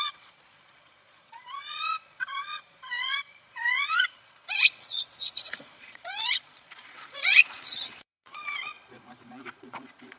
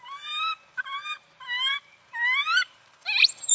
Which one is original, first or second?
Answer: second